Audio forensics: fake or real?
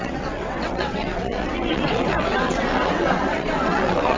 fake